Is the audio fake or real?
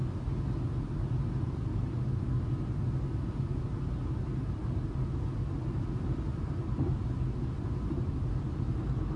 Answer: real